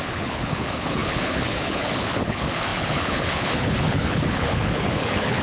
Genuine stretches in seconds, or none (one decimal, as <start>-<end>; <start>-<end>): none